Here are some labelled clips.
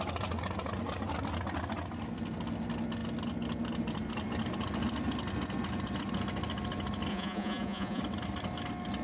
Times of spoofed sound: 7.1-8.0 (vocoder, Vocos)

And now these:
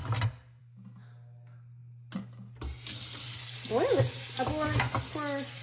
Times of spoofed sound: none

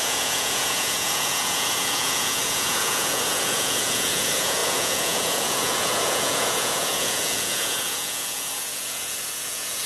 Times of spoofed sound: 0.0-9.9 (vocoder, Vocos)

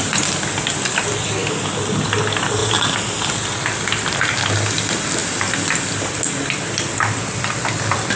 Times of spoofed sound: none